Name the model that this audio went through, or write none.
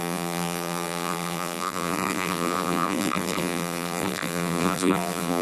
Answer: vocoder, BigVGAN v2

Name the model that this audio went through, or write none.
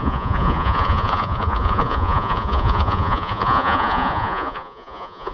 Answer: vocoder, Vocos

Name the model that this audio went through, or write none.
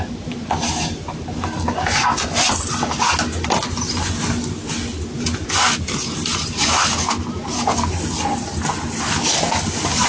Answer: none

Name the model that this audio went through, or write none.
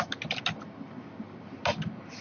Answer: none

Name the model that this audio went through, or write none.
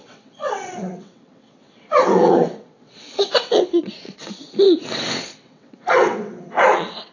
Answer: vocoder, WaveNeXt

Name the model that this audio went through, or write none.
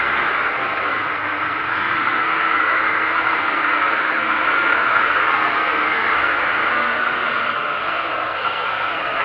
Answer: codec, SNAC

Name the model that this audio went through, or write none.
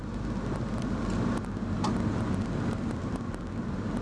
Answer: none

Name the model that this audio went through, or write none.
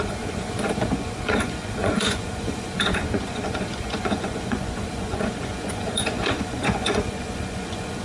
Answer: vocoder, Vocos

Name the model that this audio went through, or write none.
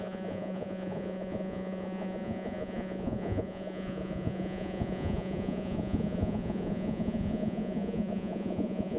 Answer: vocoder, Vocos